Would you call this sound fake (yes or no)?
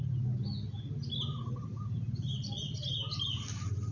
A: no